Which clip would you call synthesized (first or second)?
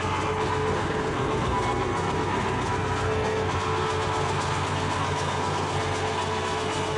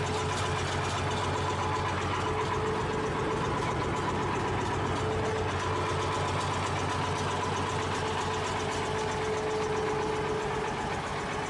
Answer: first